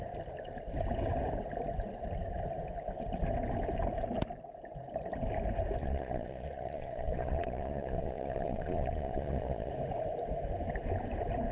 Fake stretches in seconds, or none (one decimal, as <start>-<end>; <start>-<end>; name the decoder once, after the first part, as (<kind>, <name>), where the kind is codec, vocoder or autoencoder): 5.8-9.7 (vocoder, Vocos)